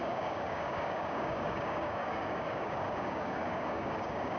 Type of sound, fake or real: fake